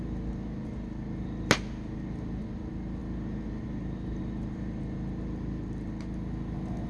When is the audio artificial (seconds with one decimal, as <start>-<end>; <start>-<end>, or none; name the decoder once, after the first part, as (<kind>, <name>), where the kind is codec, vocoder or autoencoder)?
none